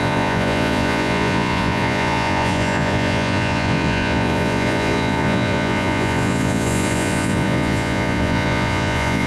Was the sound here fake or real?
fake